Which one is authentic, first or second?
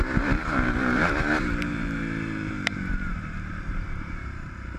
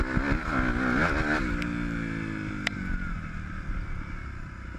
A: second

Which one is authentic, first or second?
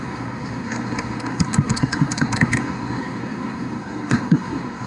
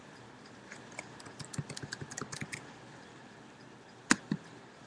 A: second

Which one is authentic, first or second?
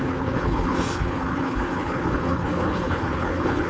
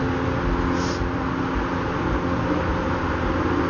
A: second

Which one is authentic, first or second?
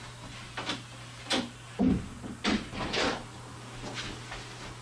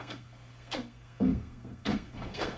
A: first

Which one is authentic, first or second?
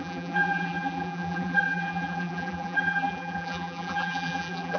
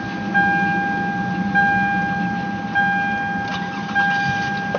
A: second